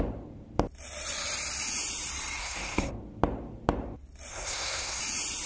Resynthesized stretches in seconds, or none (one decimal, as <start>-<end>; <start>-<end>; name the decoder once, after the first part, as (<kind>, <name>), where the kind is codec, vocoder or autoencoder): 2.4-2.9 (codec, SNAC); 4.3-5.0